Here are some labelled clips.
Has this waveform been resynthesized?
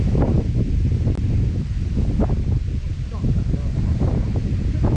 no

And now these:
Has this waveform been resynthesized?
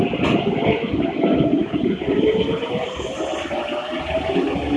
no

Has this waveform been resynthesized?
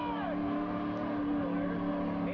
no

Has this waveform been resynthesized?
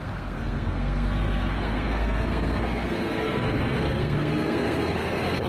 yes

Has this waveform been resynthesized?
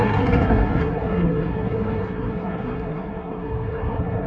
yes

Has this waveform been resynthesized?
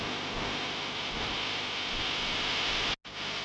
no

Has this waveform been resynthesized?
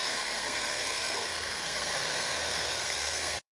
yes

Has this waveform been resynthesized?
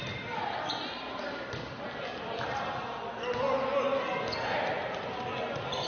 no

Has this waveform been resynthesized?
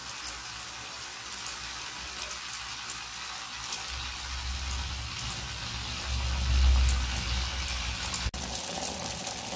no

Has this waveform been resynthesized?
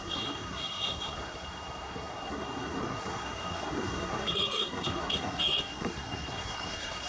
yes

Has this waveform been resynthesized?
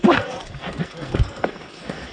yes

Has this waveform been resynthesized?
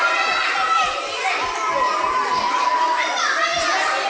no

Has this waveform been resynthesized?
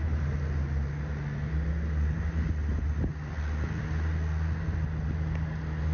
no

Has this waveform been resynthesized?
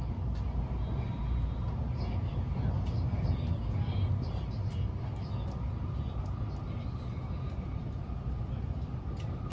no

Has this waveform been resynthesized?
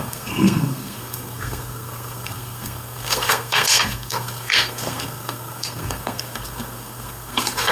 yes